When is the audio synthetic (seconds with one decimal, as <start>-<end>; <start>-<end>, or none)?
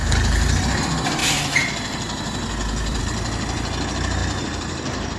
1.2-3.0; 4.2-5.2